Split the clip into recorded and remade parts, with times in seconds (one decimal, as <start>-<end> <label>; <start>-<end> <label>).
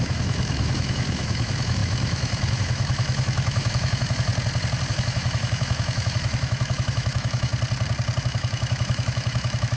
0.0-4.3 remade; 4.3-4.9 recorded; 4.9-7.5 remade; 7.5-8.2 recorded; 8.2-9.8 remade